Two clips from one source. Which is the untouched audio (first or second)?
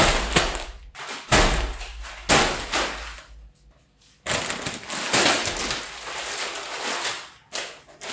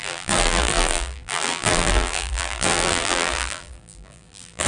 first